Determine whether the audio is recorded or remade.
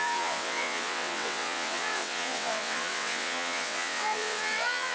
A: remade